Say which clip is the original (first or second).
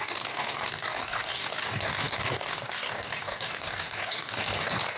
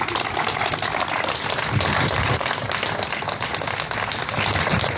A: second